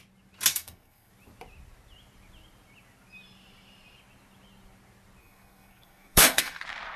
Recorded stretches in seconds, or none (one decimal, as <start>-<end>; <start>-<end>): 0.0-0.5; 1.1-5.2; 6.6-7.0